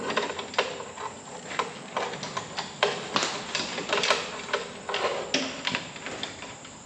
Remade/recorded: recorded